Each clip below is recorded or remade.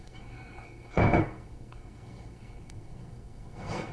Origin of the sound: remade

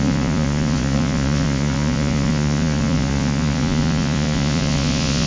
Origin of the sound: remade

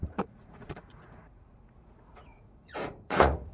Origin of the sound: remade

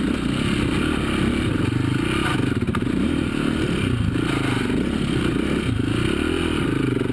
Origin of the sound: recorded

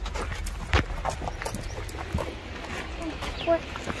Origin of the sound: recorded